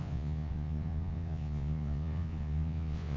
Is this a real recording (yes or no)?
no